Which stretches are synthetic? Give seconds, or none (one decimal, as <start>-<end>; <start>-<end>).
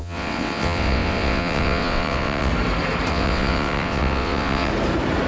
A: 0.0-2.5; 3.1-4.7